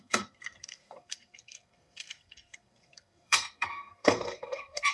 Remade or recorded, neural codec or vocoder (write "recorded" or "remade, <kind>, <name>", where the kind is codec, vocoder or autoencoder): remade, codec, SNAC